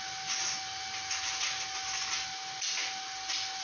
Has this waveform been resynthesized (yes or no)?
no